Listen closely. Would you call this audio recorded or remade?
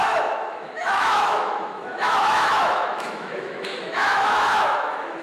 remade